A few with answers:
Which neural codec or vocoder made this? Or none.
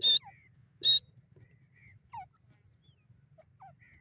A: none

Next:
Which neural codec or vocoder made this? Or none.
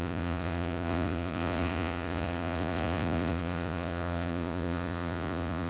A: vocoder, Vocos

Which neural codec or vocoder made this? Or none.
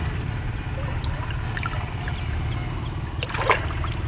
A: none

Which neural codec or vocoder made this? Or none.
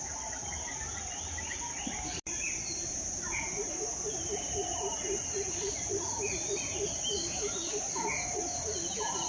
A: none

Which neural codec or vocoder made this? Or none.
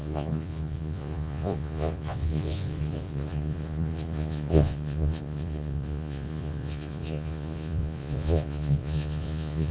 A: vocoder, Vocos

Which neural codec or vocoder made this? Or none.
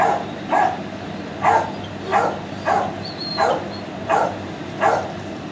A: none